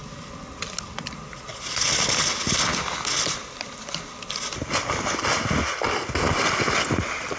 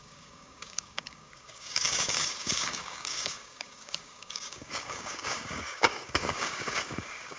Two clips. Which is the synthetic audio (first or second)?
second